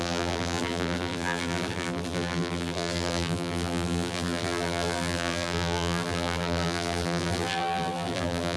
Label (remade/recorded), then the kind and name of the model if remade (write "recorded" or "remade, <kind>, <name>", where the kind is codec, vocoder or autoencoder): remade, vocoder, BigVGAN v2